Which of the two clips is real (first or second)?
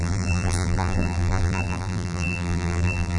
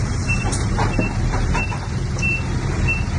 second